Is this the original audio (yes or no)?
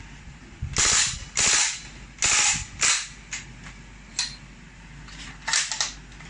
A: yes